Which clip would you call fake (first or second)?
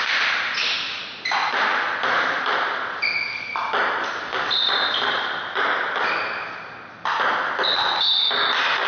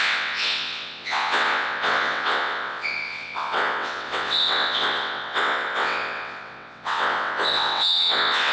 second